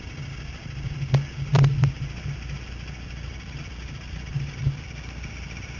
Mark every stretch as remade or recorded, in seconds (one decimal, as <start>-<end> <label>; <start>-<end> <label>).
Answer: 0.0-5.8 recorded